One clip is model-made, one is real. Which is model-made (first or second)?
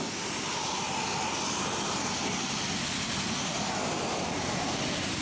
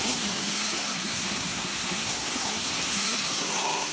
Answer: second